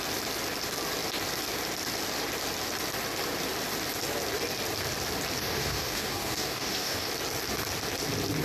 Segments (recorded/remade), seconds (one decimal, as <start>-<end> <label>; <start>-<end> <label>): 0.0-5.4 recorded; 5.4-7.1 remade; 7.1-8.4 recorded